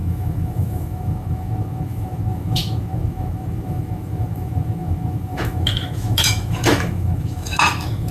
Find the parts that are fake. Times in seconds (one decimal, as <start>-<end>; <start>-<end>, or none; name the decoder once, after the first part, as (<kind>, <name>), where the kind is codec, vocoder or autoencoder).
0.0-8.1 (autoencoder, DAC-VAE)